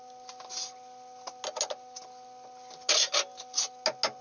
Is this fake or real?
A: real